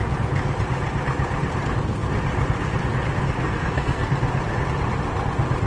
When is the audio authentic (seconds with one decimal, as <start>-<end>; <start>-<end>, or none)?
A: 0.0-3.4; 4.1-5.7